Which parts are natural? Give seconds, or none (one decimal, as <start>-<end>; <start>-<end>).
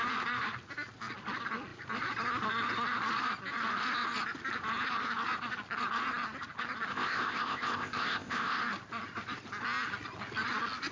0.0-6.9; 8.6-10.9